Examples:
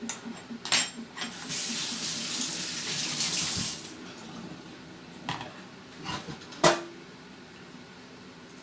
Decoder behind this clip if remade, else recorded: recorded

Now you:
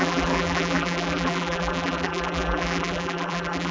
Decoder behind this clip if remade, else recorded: remade, vocoder, BigVGAN v2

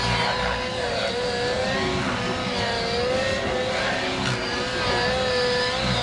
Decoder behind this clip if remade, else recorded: recorded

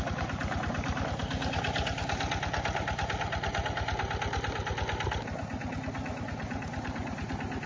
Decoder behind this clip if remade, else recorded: recorded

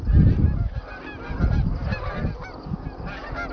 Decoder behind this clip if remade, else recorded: recorded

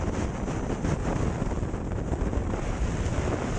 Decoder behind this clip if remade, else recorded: recorded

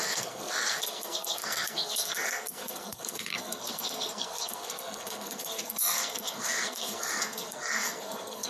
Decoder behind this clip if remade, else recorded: remade, codec, SNAC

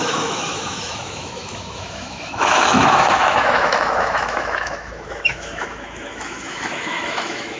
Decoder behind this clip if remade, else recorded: remade, autoencoder, DAC-VAE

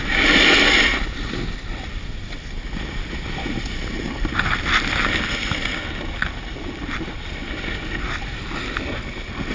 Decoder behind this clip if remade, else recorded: recorded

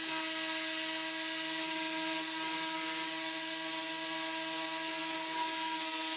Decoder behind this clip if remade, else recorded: recorded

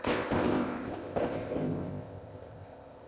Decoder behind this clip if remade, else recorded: remade, codec, ZipCodec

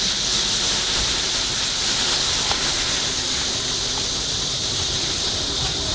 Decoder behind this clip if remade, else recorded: remade, vocoder, BigVGAN v2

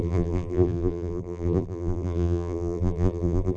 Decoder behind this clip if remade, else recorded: remade, vocoder, BigVGAN v2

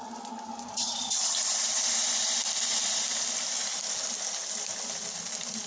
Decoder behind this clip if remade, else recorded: recorded